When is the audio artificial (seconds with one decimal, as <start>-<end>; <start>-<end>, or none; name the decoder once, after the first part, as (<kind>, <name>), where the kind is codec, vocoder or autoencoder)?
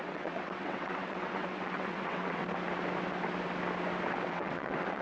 0.0-2.4 (vocoder, WaveNeXt); 4.3-5.0